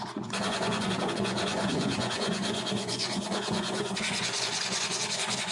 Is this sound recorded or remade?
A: remade